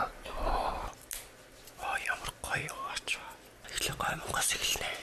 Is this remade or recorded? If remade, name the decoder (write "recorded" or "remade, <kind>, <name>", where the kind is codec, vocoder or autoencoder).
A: recorded